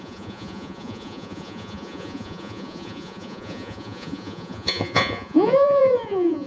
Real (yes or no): no